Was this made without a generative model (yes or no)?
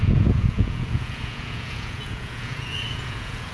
no